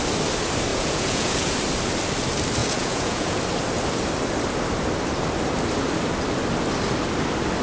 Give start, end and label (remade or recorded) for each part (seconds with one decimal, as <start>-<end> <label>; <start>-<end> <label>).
0.0-0.7 recorded; 0.7-1.5 remade; 1.5-2.6 recorded; 2.6-3.4 remade; 3.4-7.6 recorded